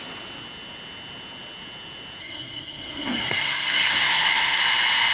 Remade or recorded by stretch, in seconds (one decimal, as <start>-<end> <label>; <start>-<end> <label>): 0.0-2.2 recorded; 2.2-4.6 remade; 4.6-5.1 recorded